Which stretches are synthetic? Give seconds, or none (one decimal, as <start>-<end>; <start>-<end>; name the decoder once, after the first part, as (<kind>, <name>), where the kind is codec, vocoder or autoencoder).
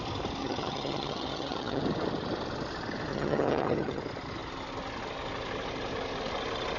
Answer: 0.4-1.8 (vocoder, HiFi-GAN); 3.1-4.0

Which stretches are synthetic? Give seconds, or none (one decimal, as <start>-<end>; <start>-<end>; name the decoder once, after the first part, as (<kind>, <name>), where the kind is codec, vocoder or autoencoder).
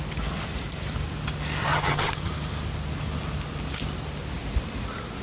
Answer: 1.7-2.3 (vocoder, HiFi-GAN)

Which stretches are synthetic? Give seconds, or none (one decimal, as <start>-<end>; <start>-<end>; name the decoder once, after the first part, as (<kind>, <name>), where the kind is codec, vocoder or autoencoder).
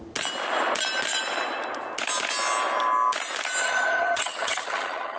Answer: 3.6-5.2 (vocoder, HiFi-GAN)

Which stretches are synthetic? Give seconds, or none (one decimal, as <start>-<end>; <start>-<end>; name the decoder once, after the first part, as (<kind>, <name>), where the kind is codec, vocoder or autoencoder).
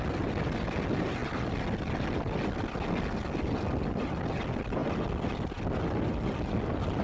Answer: none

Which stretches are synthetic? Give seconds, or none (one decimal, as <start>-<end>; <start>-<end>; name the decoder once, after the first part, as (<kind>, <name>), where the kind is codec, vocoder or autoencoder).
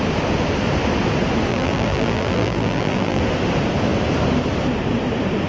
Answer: 1.5-3.2 (vocoder, BigVGAN v2)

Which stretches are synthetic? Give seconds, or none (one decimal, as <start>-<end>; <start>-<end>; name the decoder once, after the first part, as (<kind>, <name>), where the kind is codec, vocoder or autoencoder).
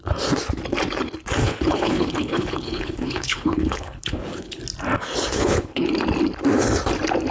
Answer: 1.4-4.6 (codec, HILCodec); 5.3-5.9